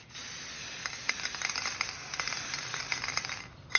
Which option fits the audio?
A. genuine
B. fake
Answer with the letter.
A